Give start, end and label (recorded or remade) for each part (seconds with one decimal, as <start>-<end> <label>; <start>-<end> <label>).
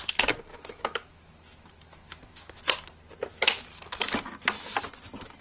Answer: 0.0-0.5 recorded; 0.5-2.6 remade; 2.6-3.3 recorded; 3.3-4.1 remade; 4.1-5.4 recorded